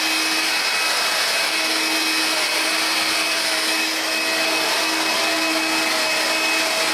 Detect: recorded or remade recorded